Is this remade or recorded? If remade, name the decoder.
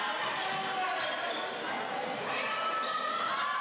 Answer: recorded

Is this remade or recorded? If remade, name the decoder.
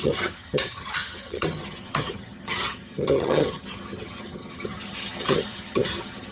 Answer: remade, vocoder, HiFi-GAN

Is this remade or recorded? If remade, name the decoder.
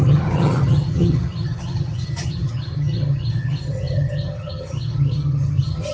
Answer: remade, vocoder, HiFi-GAN